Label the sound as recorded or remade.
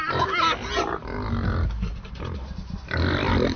recorded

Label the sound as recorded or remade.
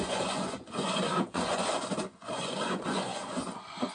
remade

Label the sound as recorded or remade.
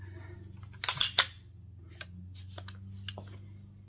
recorded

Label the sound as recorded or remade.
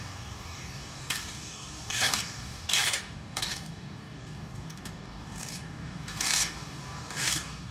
remade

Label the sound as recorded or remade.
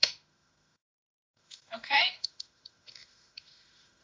remade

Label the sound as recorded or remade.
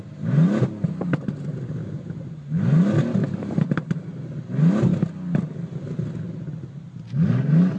recorded